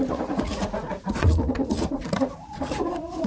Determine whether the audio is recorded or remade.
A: remade